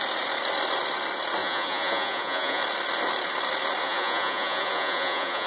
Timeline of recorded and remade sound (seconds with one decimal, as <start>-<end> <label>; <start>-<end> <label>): 0.0-1.4 recorded; 1.4-2.6 remade; 2.6-3.8 recorded; 3.8-5.5 remade